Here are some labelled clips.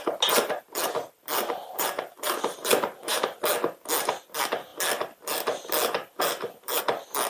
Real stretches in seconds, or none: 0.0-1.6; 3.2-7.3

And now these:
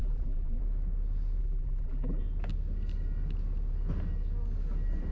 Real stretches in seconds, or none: 0.6-1.4; 2.2-5.1

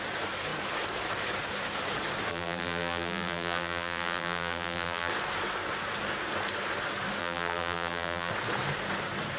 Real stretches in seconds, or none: 0.0-2.3; 5.1-7.2; 8.3-9.4